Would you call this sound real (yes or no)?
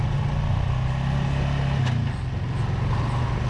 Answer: yes